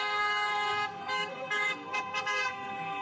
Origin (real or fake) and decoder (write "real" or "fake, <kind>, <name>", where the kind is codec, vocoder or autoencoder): fake, codec, SNAC